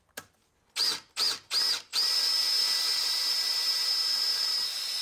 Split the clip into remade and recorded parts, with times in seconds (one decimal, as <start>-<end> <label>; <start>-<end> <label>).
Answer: 0.0-1.9 recorded; 1.9-5.0 remade